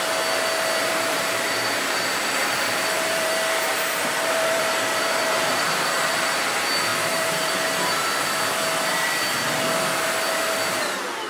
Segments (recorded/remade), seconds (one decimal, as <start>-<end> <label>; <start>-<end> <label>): 0.0-0.8 recorded; 0.8-3.3 remade; 3.3-3.7 recorded; 3.7-6.1 remade; 6.1-6.9 recorded; 6.9-7.5 remade; 7.5-11.3 recorded